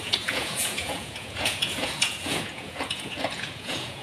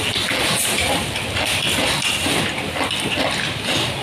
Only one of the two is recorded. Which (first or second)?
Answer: second